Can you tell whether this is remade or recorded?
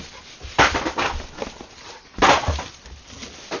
recorded